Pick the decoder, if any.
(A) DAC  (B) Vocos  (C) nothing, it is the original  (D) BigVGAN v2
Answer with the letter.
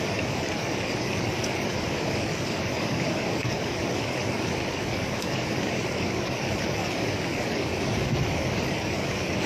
A